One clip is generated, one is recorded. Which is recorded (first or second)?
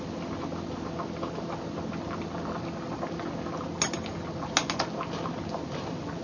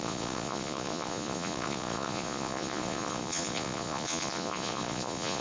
first